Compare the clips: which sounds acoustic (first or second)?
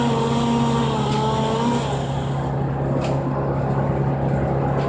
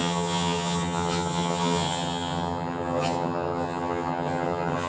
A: first